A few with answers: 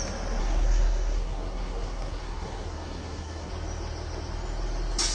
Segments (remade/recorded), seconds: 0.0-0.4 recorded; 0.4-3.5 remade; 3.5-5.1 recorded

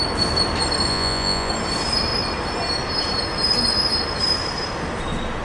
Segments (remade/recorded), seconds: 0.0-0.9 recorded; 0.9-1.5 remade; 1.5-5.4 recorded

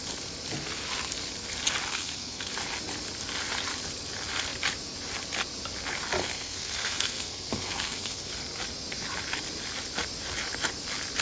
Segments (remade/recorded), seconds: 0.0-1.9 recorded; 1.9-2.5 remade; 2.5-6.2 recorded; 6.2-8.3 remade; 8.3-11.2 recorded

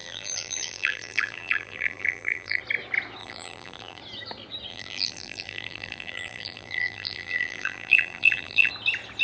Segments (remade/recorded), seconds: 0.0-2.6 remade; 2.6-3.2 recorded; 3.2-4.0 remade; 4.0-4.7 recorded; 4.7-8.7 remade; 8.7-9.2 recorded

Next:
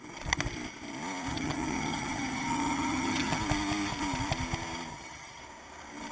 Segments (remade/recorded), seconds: 0.0-1.3 recorded; 1.3-3.4 remade; 3.4-4.9 recorded; 4.9-5.4 remade; 5.4-6.1 recorded

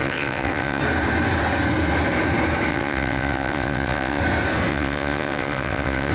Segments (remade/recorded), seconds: 0.0-0.8 remade; 0.8-2.7 recorded; 2.7-4.2 remade; 4.2-4.7 recorded; 4.7-6.1 remade

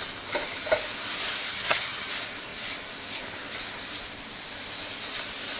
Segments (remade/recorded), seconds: 0.0-1.5 recorded; 1.5-2.1 remade; 2.1-5.6 recorded